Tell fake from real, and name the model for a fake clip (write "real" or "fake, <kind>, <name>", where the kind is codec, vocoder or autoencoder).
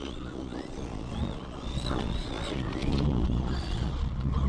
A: fake, vocoder, Vocos